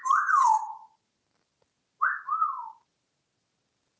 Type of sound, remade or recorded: recorded